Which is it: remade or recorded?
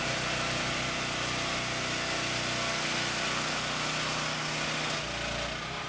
recorded